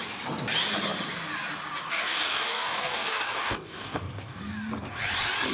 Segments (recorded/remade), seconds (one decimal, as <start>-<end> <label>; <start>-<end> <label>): 0.0-1.9 recorded; 1.9-4.4 remade; 4.4-5.5 recorded